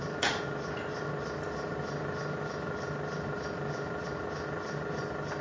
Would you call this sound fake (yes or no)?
no